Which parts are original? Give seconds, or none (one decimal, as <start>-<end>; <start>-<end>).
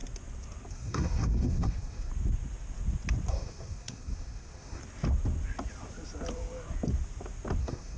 0.0-0.7; 2.1-3.3; 4.8-7.6